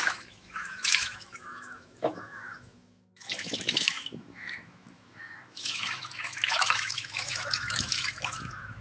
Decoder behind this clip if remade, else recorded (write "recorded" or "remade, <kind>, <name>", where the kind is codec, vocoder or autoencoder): remade, autoencoder, DAC-VAE